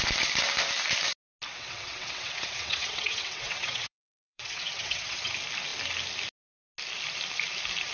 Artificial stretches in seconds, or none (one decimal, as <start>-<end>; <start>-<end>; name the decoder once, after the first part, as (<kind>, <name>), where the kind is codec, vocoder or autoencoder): 1.5-5.3 (vocoder, WaveNeXt)